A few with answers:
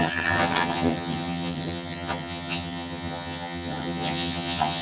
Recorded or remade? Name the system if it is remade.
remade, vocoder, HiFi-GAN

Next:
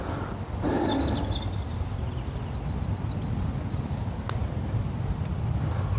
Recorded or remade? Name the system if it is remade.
recorded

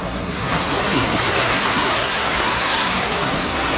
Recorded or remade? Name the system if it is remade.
remade, codec, SNAC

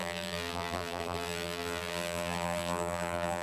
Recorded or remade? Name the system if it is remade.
remade, vocoder, BigVGAN v2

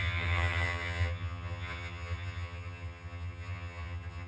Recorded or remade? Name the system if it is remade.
remade, vocoder, HiFi-GAN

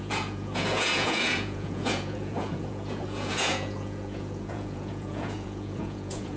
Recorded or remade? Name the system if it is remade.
remade, vocoder, Vocos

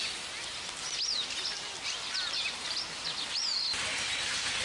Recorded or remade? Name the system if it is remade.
recorded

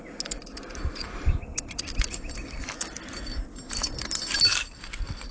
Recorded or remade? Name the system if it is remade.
recorded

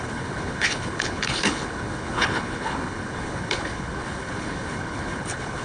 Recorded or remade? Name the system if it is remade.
remade, codec, HILCodec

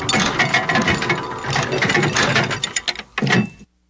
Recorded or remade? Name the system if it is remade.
recorded